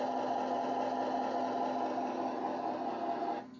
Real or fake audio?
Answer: real